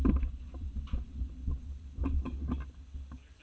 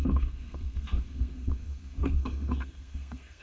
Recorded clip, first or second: first